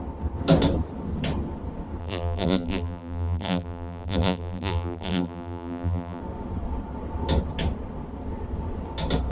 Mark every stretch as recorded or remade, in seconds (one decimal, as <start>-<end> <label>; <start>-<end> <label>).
0.0-2.0 recorded; 2.0-6.2 remade; 6.2-9.3 recorded